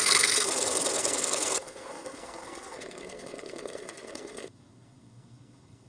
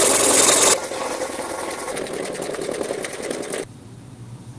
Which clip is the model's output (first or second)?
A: first